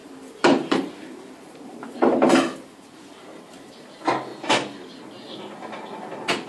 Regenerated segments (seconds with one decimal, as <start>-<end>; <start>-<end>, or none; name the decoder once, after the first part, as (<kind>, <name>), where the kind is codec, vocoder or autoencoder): 0.0-3.9 (vocoder, BigVGAN v2)